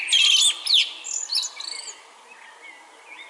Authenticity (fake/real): real